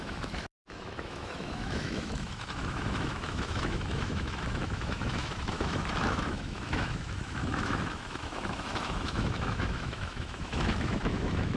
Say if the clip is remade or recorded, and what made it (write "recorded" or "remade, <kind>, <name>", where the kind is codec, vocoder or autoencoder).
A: remade, autoencoder, DAC-VAE